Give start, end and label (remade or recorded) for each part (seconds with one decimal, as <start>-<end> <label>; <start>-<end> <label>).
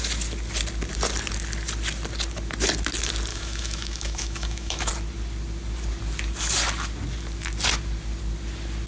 0.0-3.3 recorded; 3.3-4.9 remade; 4.9-8.9 recorded